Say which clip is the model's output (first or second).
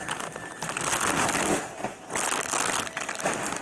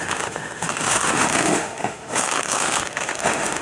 second